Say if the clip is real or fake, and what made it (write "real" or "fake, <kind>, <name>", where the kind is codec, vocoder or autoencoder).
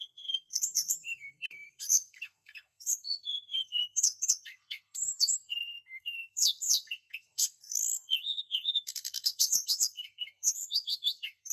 fake, codec, SNAC